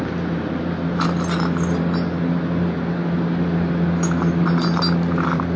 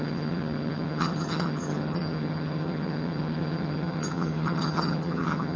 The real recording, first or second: first